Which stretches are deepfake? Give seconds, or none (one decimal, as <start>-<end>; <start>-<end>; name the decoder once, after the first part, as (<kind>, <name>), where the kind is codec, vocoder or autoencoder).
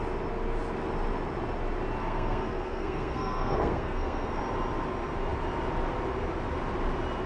2.0-4.4 (codec, SNAC)